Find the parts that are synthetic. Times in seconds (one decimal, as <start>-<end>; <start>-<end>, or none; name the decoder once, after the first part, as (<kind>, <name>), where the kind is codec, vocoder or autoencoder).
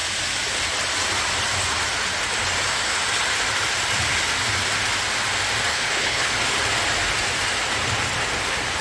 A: 5.7-6.3 (codec, HILCodec)